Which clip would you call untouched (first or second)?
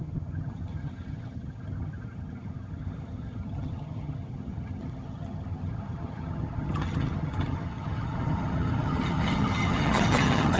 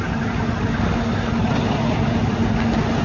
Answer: second